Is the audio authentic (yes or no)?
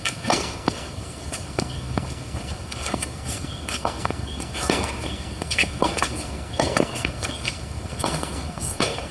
no